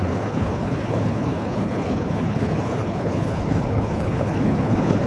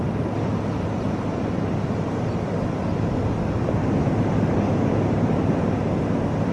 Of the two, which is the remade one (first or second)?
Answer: first